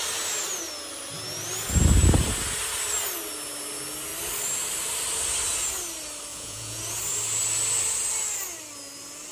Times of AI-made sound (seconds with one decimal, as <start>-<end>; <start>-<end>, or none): 6.3-6.8